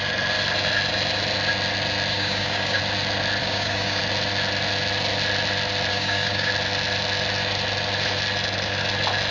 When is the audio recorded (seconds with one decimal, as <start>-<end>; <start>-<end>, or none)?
0.0-2.1; 2.8-3.4; 4.0-5.9; 6.5-9.3